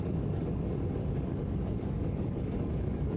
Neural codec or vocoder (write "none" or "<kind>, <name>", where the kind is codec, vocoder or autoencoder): codec, DAC